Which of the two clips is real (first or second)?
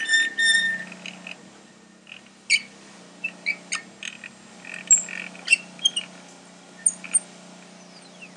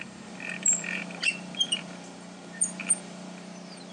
first